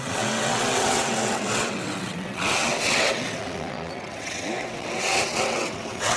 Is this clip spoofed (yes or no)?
yes